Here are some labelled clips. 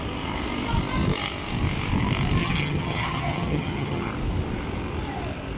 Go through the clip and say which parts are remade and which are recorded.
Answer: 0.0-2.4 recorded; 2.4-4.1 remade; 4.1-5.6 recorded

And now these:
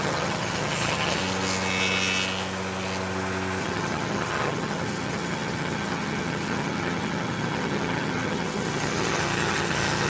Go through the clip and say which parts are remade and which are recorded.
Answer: 0.0-1.2 remade; 1.2-3.6 recorded; 3.6-10.1 remade